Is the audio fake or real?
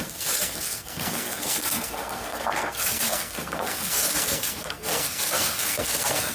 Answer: fake